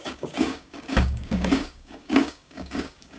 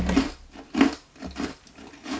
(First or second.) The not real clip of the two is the first